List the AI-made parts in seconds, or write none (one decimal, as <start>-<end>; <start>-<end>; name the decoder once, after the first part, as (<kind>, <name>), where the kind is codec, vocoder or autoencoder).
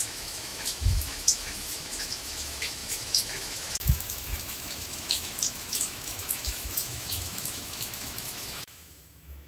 0.0-9.5 (autoencoder, DAC-VAE)